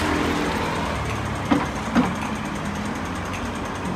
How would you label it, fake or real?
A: real